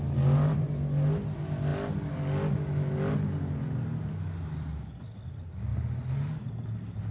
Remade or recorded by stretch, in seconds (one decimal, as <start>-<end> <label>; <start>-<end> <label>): 0.0-7.1 recorded